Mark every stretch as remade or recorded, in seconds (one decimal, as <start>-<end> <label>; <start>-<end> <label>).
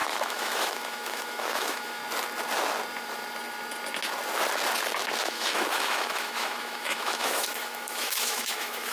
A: 0.0-2.0 remade; 2.0-5.2 recorded; 5.2-8.9 remade